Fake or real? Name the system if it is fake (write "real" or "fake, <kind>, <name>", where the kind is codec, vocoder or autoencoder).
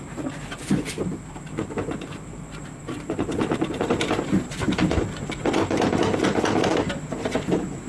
fake, vocoder, BigVGAN v2